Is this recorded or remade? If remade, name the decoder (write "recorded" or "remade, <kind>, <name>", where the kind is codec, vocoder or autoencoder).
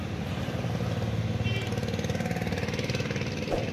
recorded